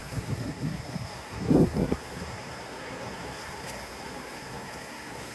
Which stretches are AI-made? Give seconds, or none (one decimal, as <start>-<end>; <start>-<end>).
0.0-5.3